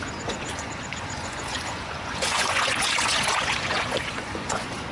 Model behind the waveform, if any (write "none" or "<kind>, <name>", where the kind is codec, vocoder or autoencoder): vocoder, Vocos